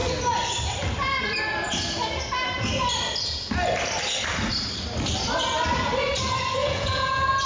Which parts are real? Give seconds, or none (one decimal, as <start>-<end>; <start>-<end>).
0.0-6.6